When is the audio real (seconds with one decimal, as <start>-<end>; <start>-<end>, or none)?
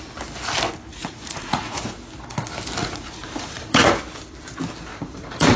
0.0-0.9; 1.9-2.8; 4.0-4.9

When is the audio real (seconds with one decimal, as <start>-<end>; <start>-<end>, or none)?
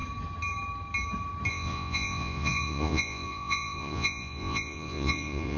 0.0-1.5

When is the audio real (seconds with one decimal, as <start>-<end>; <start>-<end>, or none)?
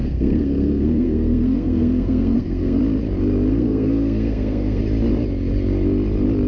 2.8-3.5; 4.8-6.5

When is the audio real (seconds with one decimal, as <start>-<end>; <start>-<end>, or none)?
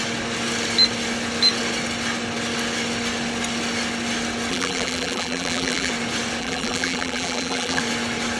0.0-4.5; 5.9-6.4; 7.8-8.4